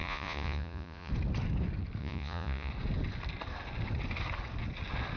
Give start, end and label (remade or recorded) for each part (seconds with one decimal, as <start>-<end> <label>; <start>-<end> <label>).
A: 0.0-1.1 remade; 1.1-2.0 recorded; 2.0-2.7 remade; 2.7-5.2 recorded